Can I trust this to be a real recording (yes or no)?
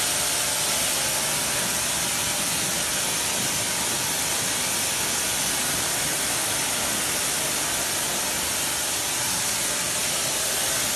yes